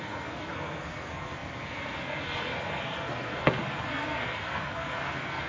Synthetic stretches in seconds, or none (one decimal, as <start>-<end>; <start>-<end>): 0.0-5.5